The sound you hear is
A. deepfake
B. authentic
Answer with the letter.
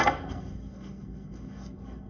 A